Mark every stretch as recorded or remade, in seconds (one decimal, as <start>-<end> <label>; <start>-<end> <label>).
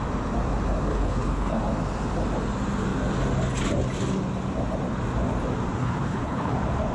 0.0-0.9 recorded; 0.9-1.6 remade; 1.6-5.8 recorded; 5.8-6.5 remade; 6.5-6.9 recorded